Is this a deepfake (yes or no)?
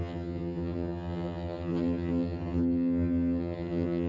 yes